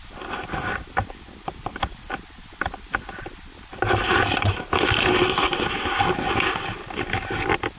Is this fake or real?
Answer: fake